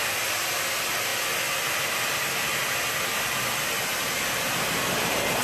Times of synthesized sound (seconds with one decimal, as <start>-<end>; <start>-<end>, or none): none